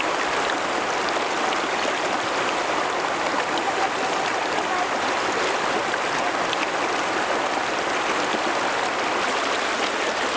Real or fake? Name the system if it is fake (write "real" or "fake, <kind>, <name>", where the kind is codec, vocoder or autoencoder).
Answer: real